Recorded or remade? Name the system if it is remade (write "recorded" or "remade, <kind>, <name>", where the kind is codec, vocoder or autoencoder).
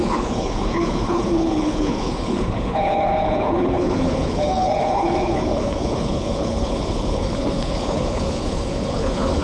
remade, codec, HILCodec